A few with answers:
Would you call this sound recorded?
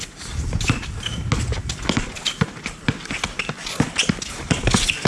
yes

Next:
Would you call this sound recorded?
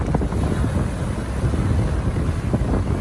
yes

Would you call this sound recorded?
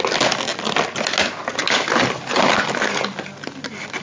yes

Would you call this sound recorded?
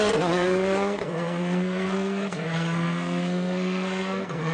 no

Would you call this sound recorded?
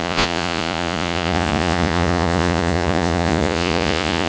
no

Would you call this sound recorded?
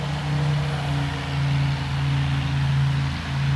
yes